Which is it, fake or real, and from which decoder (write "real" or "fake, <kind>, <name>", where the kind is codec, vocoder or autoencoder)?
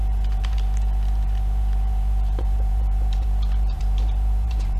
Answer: fake, vocoder, BigVGAN v2